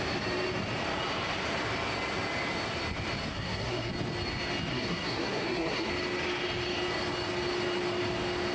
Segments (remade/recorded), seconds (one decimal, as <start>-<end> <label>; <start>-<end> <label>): 0.0-3.3 recorded; 3.3-3.9 remade; 3.9-4.7 recorded; 4.7-5.9 remade; 5.9-8.5 recorded